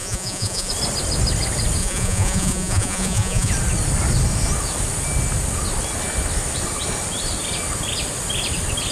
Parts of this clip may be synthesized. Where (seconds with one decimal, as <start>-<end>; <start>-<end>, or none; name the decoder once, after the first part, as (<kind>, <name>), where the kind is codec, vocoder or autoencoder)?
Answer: 0.0-0.7 (vocoder, Vocos); 1.8-3.5